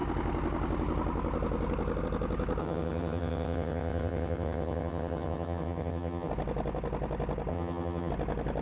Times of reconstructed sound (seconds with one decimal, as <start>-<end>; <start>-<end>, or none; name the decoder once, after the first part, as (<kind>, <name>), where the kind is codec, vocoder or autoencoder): 2.6-6.3 (vocoder, HiFi-GAN); 7.5-8.1